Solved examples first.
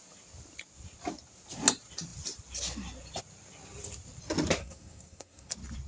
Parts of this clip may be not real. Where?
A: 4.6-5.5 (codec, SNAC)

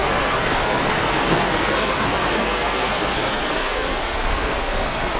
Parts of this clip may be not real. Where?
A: 0.0-5.2 (codec, SNAC)

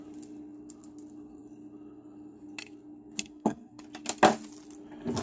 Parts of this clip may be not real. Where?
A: 3.3-3.8 (codec, SNAC)

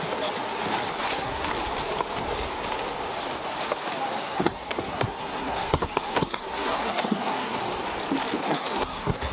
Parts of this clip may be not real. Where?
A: 0.9-1.5 (codec, SNAC); 4.2-7.6; 8.4-9.3

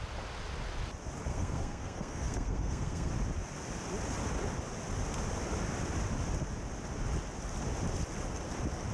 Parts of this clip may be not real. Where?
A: 1.3-3.1 (codec, SNAC)

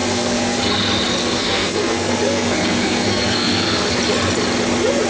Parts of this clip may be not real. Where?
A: 0.0-0.6 (codec, SNAC); 1.2-3.9

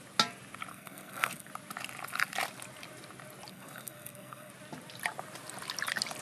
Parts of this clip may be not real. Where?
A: 0.7-1.5 (codec, SNAC); 3.5-4.5

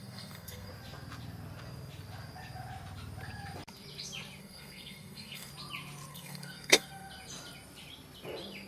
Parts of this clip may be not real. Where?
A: 0.0-0.7 (codec, SNAC); 4.4-5.5; 6.1-7.1